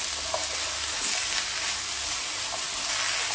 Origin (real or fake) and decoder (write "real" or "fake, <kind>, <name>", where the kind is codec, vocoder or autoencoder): real